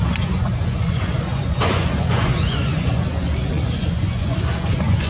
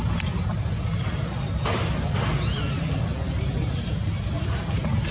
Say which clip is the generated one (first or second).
first